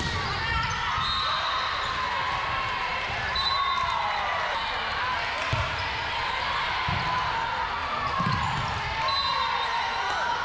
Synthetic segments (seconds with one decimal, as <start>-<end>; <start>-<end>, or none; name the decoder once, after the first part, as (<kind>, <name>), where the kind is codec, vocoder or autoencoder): 2.9-3.6 (vocoder, BigVGAN v2); 7.8-8.4; 9.3-10.0